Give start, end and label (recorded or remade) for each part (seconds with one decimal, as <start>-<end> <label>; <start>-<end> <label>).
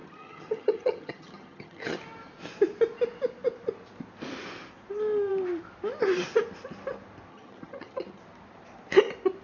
0.0-2.0 remade; 2.0-7.3 recorded; 7.3-8.2 remade; 8.2-9.4 recorded